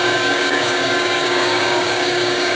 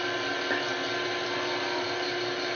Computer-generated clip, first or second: first